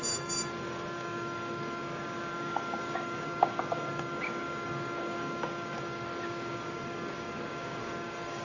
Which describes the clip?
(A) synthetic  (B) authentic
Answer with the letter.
A